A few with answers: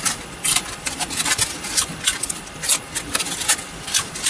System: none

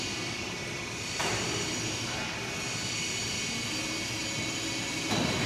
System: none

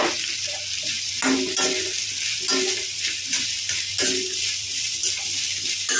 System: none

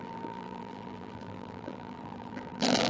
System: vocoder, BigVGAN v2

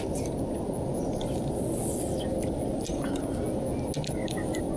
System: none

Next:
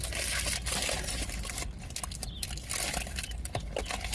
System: none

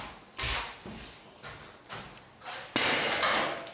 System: none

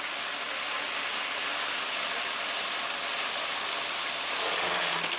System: none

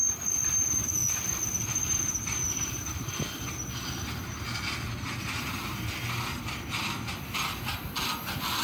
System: none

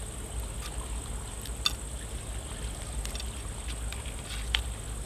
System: none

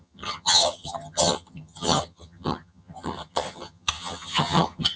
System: vocoder, HiFi-GAN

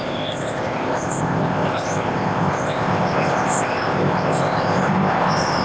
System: codec, ZipCodec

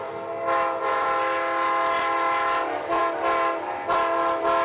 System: none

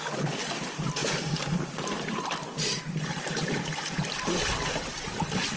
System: none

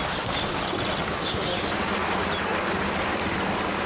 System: none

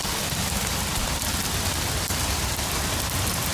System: vocoder, BigVGAN v2